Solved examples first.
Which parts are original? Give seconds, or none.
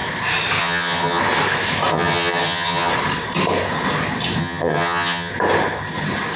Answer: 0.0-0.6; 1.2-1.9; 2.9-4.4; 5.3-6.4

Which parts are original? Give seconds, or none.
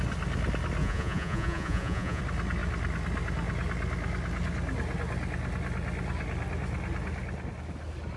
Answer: 0.0-0.8; 2.2-8.2